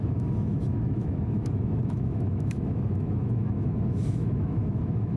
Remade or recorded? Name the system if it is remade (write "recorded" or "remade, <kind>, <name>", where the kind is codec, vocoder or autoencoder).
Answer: remade, autoencoder, DAC-VAE